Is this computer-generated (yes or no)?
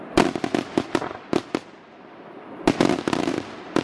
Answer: no